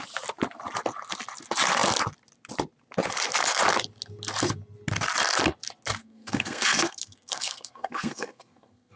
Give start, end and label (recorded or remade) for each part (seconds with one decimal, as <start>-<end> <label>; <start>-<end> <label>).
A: 0.0-6.0 recorded; 6.0-9.0 remade